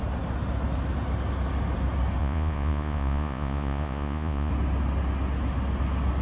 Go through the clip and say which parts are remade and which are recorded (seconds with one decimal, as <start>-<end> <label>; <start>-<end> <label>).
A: 0.0-2.2 recorded; 2.2-4.5 remade; 4.5-6.2 recorded